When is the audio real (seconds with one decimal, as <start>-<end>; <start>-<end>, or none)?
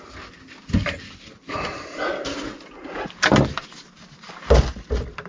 0.0-5.3